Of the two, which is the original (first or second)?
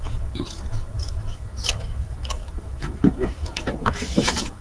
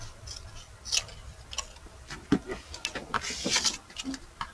second